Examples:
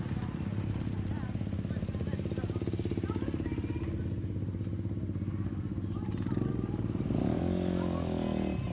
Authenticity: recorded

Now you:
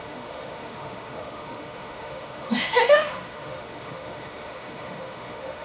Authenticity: remade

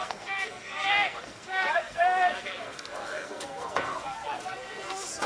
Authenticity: remade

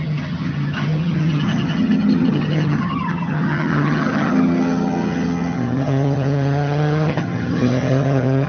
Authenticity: remade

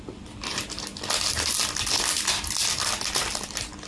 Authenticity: recorded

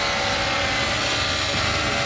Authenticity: recorded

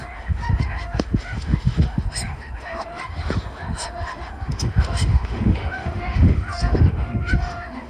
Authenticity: remade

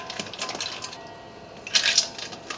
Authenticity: recorded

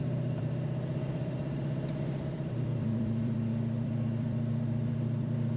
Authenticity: remade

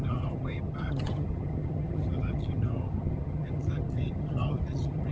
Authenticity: remade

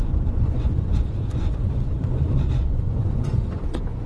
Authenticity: remade